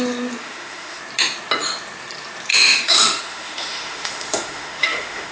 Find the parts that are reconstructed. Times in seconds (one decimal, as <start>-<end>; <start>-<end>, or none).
0.4-1.0; 2.5-5.3